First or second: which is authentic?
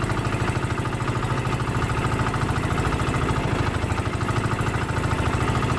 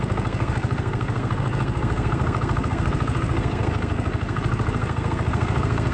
first